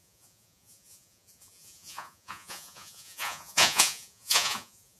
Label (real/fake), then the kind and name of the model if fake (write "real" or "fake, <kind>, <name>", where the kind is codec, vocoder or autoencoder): fake, vocoder, Vocos